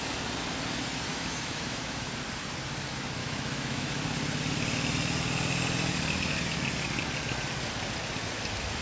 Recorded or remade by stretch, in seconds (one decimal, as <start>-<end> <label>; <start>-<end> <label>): 0.0-1.1 recorded; 1.1-2.1 remade; 2.1-3.2 recorded; 3.2-4.0 remade; 4.0-8.8 recorded